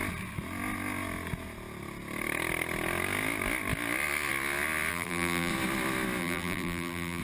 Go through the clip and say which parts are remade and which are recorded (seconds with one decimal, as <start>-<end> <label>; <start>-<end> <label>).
0.0-4.9 recorded; 4.9-5.5 remade; 5.5-6.2 recorded; 6.2-7.2 remade